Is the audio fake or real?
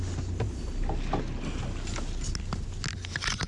real